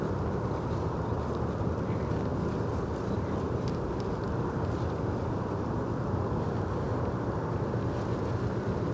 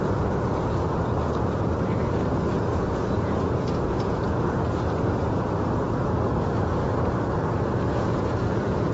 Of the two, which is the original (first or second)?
first